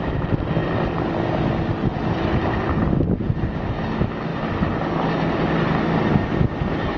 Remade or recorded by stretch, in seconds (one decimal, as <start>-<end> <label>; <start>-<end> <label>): 0.0-7.0 recorded